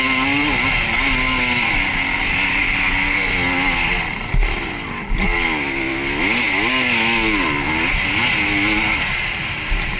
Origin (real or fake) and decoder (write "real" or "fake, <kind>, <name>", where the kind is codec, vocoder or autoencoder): real